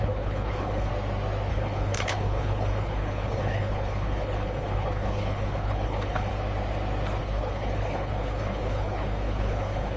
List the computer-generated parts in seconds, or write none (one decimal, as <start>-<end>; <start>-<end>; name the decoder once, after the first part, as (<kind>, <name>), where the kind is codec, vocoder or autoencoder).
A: 0.0-0.9 (codec, HILCodec); 1.5-6.3; 7.2-10.0